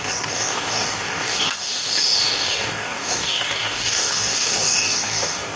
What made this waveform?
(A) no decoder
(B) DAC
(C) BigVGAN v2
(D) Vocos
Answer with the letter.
B